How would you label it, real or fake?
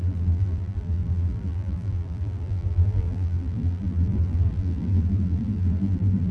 fake